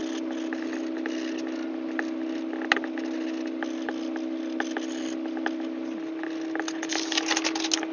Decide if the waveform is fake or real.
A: real